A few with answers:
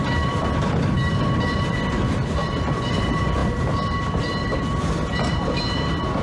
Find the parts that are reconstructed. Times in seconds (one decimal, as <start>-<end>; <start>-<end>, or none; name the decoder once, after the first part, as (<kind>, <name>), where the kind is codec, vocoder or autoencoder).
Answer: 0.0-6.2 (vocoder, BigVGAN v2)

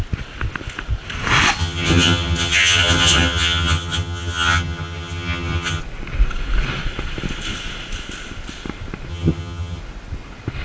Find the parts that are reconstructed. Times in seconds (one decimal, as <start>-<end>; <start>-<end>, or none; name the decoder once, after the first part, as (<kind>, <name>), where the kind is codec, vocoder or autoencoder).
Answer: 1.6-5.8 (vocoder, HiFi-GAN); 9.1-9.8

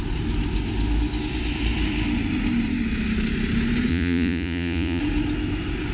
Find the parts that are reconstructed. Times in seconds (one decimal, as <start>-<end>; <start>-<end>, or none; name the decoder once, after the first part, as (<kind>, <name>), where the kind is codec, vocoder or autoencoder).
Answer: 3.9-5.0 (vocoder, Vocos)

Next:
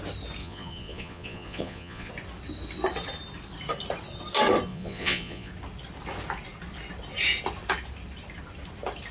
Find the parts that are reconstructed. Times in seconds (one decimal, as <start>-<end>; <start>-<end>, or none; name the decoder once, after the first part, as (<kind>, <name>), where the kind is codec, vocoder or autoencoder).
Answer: 0.4-2.1 (vocoder, Vocos); 4.7-5.5